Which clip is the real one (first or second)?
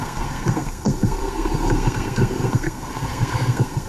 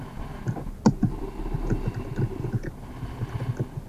second